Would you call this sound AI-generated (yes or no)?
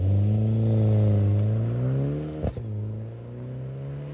no